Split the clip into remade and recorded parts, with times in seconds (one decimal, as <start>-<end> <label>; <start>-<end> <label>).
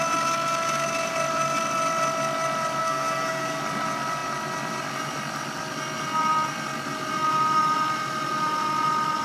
0.0-2.8 recorded; 2.8-3.6 remade; 3.6-9.2 recorded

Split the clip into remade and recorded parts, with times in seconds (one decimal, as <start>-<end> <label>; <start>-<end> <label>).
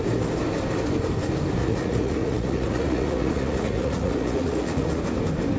0.0-1.6 recorded; 1.6-5.0 remade; 5.0-5.6 recorded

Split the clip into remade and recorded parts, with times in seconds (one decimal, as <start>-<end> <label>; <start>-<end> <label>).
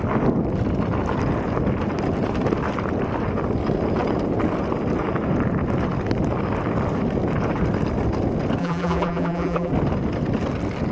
0.0-8.6 recorded; 8.6-9.7 remade; 9.7-10.9 recorded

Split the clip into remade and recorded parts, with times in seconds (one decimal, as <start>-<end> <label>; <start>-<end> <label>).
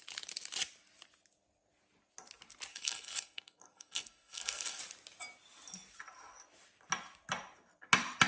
0.0-2.7 recorded; 2.7-4.8 remade; 4.8-8.3 recorded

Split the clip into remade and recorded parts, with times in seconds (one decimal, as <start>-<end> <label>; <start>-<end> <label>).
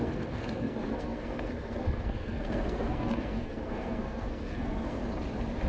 0.0-5.0 remade; 5.0-5.7 recorded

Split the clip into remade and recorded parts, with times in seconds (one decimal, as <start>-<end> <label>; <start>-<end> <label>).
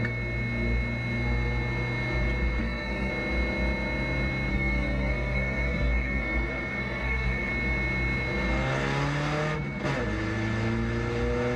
0.0-2.6 recorded; 2.6-3.1 remade; 3.1-4.5 recorded; 4.5-7.5 remade; 7.5-11.6 recorded